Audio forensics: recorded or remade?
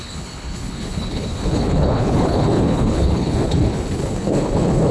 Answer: remade